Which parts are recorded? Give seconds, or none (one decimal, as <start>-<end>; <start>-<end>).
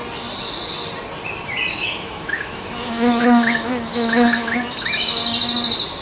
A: 0.0-1.7; 5.2-6.0